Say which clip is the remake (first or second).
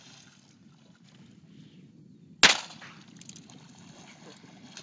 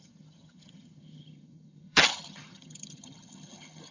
second